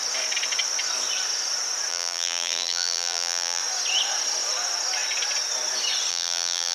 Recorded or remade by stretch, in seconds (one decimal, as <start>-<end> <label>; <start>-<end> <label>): 0.0-1.9 recorded; 1.9-3.6 remade; 3.6-6.1 recorded; 6.1-6.7 remade